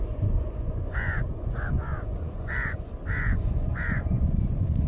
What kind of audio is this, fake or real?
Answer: fake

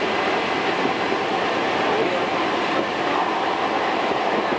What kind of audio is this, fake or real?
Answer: real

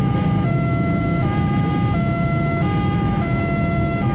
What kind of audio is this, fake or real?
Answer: fake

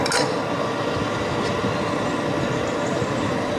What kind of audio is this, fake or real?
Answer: real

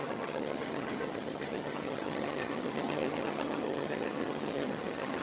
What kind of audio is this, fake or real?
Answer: fake